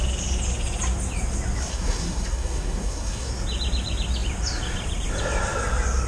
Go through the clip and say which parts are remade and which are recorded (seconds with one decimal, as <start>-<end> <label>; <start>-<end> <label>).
0.0-1.7 recorded; 1.7-3.3 remade; 3.3-6.1 recorded